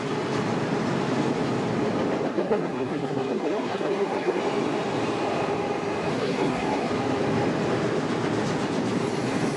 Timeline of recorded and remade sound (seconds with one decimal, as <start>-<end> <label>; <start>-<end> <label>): 0.0-2.3 recorded; 2.3-4.4 remade; 4.4-6.1 recorded; 6.1-6.9 remade; 6.9-9.6 recorded

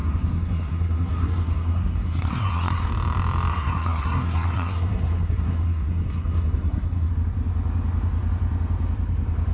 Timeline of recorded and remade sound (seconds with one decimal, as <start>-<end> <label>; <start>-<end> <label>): 0.0-2.9 remade; 2.9-3.5 recorded; 3.5-7.1 remade; 7.1-9.5 recorded

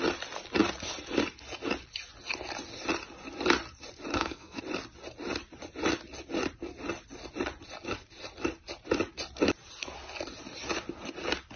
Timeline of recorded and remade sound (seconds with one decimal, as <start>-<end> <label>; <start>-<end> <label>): 0.0-4.1 recorded; 4.1-4.6 remade; 4.6-11.6 recorded

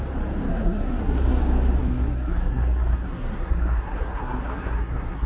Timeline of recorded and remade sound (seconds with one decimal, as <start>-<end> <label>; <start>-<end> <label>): 0.0-0.5 recorded; 0.5-1.4 remade; 1.4-1.8 recorded; 1.8-5.3 remade

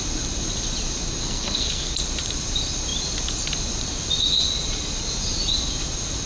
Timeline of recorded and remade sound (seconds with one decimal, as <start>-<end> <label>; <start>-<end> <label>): 0.0-1.2 recorded; 1.2-1.9 remade; 1.9-6.3 recorded

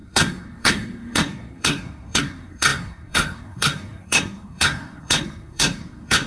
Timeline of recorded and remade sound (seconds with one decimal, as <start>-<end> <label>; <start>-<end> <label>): 0.0-6.3 remade